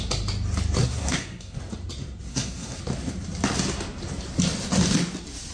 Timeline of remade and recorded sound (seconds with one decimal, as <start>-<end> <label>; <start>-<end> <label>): 0.0-0.8 recorded; 0.8-1.6 remade; 1.6-2.3 recorded; 2.3-2.8 remade; 2.8-5.5 recorded

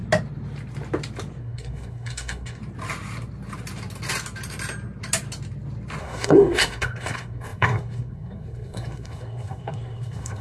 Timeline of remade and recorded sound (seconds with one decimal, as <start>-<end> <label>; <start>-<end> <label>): 0.0-1.4 recorded; 1.4-2.6 remade; 2.6-6.0 recorded; 6.0-10.4 remade

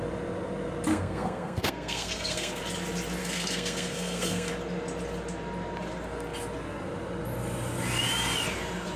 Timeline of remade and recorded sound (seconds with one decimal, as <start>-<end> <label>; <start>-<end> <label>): 0.0-0.9 recorded; 0.9-2.6 remade; 2.6-3.2 recorded; 3.2-4.5 remade; 4.5-9.0 recorded